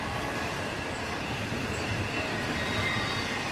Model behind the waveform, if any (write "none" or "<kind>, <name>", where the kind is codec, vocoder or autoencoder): vocoder, BigVGAN v2